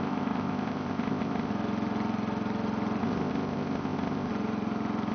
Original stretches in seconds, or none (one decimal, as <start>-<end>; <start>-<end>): 1.5-3.0; 4.3-5.1